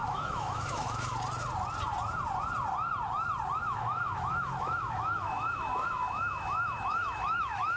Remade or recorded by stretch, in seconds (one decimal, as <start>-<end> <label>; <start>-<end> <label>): 0.0-1.1 remade; 1.1-3.6 recorded; 3.6-7.8 remade